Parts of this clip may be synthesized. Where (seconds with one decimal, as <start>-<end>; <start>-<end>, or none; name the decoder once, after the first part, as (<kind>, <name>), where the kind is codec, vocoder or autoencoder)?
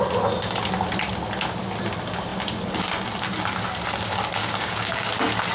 4.4-5.1 (codec, DAC)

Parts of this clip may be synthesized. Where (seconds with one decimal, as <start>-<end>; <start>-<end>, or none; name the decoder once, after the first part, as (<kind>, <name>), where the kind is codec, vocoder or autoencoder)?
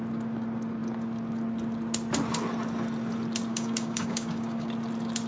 3.5-4.7 (codec, DAC)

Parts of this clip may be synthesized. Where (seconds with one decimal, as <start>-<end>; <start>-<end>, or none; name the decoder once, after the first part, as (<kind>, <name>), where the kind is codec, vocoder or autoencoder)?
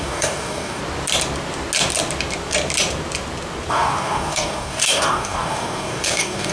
0.0-0.8 (codec, DAC); 3.7-6.5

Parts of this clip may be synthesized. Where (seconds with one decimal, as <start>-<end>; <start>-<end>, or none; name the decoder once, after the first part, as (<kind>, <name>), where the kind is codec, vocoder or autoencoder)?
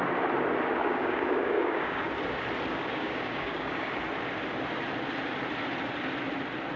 0.8-2.1 (codec, DAC); 2.7-3.9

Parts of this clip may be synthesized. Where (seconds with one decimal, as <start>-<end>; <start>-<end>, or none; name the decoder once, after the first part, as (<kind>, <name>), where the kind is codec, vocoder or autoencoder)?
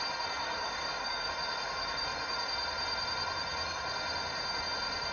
0.4-1.3 (codec, DAC)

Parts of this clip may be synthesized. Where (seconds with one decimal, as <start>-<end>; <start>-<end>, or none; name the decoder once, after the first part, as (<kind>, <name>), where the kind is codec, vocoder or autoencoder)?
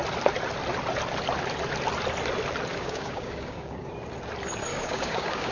2.7-3.9 (codec, DAC); 4.7-5.5